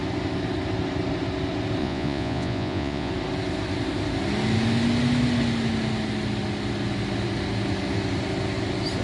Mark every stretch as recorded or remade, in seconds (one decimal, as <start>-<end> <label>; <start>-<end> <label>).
0.0-1.8 recorded; 1.8-3.1 remade; 3.1-9.0 recorded